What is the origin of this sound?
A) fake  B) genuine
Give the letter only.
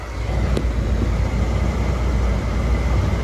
B